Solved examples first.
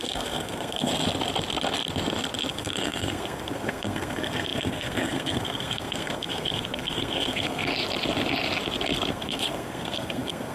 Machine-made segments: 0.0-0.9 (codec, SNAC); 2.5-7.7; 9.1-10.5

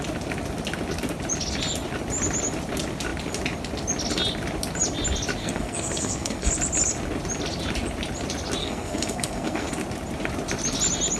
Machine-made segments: 5.4-6.5 (codec, SNAC); 8.6-9.7

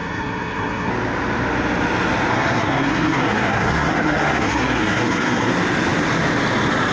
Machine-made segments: 0.0-0.9 (codec, SNAC); 2.3-5.5